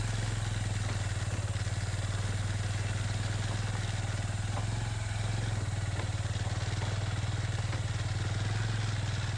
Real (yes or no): yes